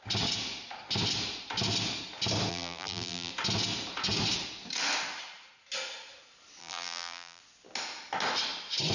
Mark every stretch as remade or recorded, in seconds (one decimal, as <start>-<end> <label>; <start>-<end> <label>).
0.0-2.5 recorded; 2.5-3.3 remade; 3.3-6.6 recorded; 6.6-7.4 remade; 7.4-8.9 recorded